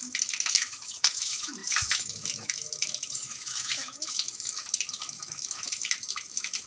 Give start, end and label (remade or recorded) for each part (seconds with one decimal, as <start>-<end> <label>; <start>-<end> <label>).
0.0-6.7 remade